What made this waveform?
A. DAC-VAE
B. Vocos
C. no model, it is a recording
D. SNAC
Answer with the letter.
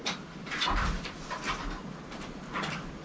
C